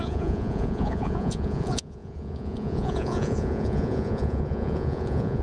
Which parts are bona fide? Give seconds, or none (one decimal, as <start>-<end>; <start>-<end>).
none